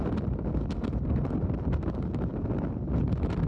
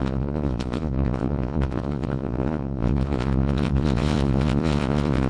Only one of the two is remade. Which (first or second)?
second